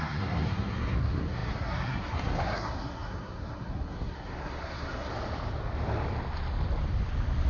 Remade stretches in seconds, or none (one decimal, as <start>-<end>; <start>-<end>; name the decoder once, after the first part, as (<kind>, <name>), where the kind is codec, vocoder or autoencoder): 0.0-5.1 (codec, SNAC)